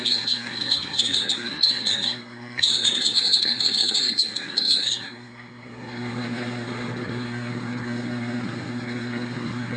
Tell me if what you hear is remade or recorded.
remade